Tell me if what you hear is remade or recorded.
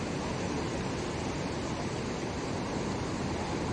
recorded